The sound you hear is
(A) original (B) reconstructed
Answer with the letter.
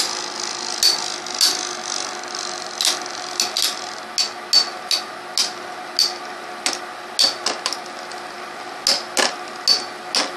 A